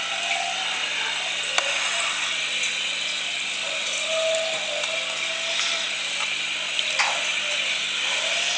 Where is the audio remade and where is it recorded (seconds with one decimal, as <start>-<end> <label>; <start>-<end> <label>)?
0.0-8.6 recorded